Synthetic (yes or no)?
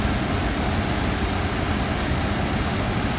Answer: no